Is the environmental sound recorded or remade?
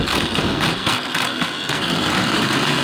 remade